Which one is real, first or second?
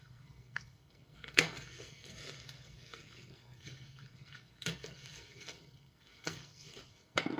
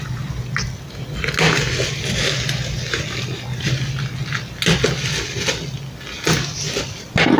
second